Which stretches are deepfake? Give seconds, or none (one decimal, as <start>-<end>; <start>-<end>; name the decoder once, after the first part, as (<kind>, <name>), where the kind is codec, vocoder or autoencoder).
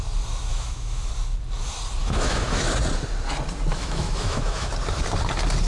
0.5-1.1 (autoencoder, DAC-VAE); 2.0-2.7; 3.7-4.7